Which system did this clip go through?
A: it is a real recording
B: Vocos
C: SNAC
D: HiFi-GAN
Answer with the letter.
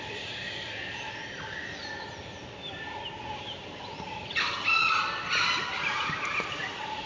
A